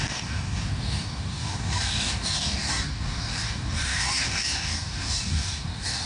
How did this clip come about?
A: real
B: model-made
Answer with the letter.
B